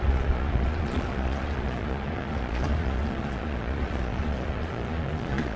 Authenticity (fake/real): fake